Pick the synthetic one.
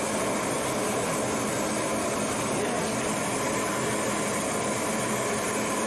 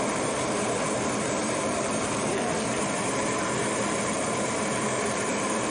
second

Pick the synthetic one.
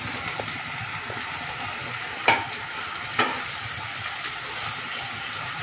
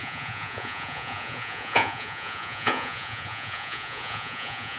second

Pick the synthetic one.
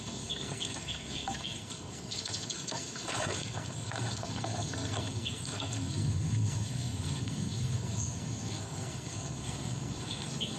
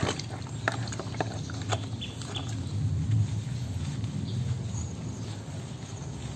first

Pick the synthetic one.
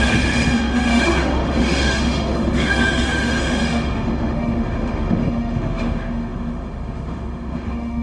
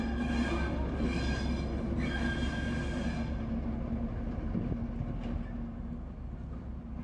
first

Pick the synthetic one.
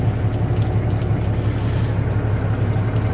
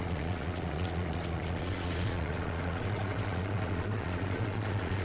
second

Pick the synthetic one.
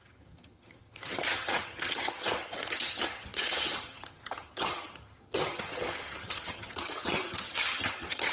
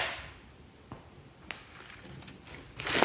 first